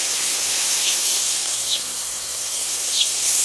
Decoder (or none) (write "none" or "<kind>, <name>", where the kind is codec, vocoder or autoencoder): codec, SNAC